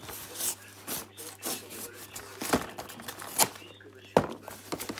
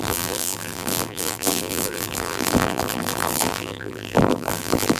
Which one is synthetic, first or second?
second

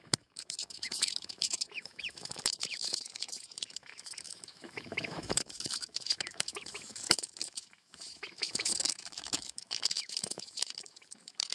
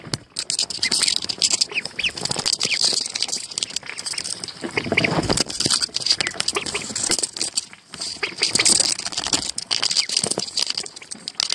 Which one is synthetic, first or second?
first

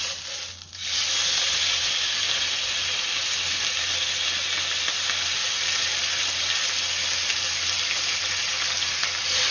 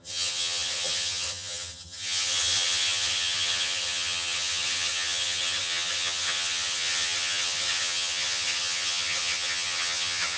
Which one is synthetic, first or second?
second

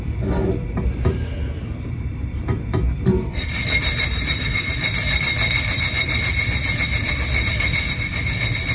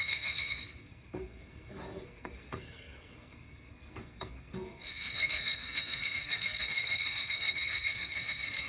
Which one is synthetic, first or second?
second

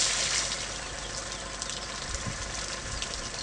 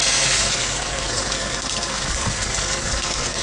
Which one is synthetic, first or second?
second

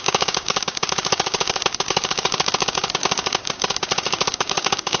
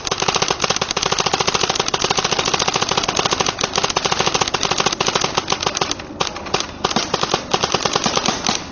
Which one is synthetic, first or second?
first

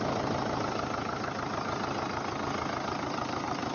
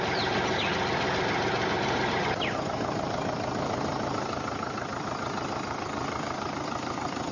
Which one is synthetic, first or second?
second